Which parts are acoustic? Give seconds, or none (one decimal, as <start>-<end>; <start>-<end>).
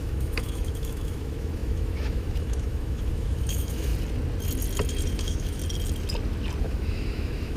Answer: 3.9-5.1; 5.6-6.6